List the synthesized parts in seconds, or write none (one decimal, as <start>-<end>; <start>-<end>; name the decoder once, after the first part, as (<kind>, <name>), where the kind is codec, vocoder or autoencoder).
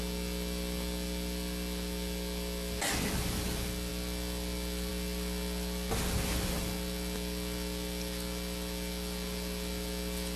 none